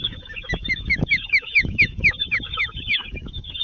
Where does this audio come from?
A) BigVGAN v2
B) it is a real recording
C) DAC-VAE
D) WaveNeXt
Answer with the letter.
C